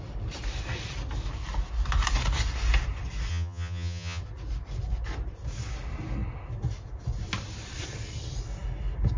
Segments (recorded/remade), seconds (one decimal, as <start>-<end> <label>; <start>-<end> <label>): 0.0-3.3 recorded; 3.3-4.2 remade; 4.2-9.2 recorded